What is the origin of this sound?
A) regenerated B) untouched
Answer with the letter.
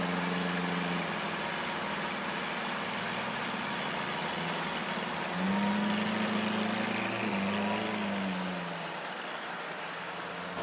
B